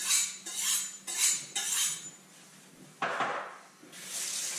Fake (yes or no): no